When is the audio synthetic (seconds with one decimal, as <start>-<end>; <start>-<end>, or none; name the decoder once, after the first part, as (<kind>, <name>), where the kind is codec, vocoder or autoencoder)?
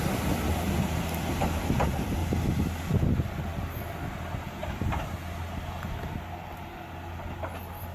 0.0-2.2 (vocoder, BigVGAN v2); 3.0-3.5; 7.2-7.9